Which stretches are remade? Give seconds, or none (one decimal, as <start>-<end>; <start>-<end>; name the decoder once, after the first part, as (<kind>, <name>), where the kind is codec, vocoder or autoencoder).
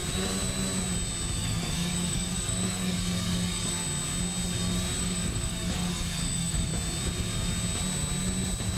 1.4-3.8 (codec, DAC); 5.0-6.7